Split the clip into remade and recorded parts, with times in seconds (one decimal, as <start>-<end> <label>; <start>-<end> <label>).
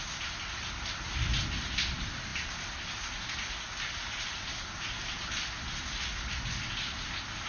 0.0-7.5 recorded